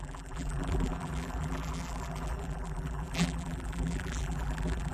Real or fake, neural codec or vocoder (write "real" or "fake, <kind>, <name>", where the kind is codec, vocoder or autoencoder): fake, vocoder, BigVGAN v2